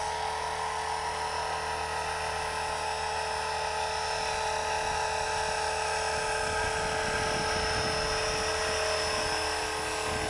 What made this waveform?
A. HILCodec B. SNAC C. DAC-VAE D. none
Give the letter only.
D